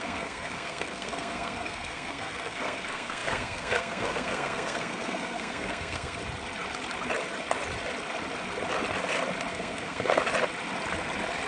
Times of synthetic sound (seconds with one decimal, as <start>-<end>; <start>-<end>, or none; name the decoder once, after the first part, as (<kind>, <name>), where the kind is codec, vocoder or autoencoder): 0.0-6.2 (codec, SNAC); 9.5-10.1